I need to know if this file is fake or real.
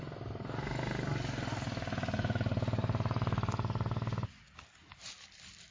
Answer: real